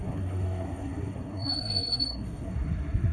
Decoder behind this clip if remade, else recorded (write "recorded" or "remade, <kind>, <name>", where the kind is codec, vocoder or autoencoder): remade, codec, SNAC